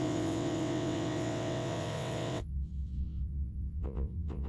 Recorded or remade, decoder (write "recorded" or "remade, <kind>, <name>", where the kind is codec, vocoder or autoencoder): remade, vocoder, WaveNeXt